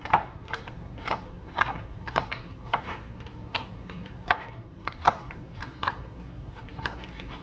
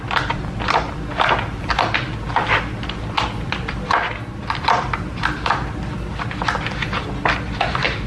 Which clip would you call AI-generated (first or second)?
first